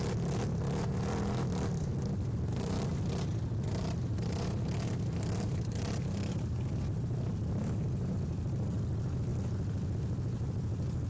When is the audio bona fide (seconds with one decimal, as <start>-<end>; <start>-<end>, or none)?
0.0-11.1